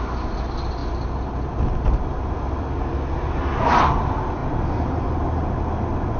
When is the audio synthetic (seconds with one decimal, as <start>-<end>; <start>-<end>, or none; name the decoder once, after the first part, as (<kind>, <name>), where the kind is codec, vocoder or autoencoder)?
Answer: none